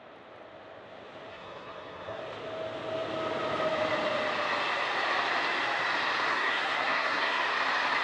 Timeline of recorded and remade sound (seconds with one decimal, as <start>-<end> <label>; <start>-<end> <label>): 0.0-1.3 recorded; 1.3-2.2 remade; 2.2-6.3 recorded; 6.3-7.4 remade; 7.4-8.0 recorded